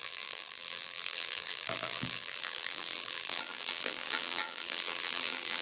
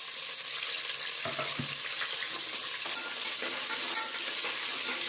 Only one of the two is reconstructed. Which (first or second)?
first